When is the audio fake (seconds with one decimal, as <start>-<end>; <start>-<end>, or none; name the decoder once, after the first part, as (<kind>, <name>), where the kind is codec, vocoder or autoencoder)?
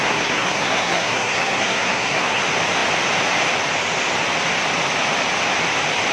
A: 0.0-2.4 (codec, SNAC)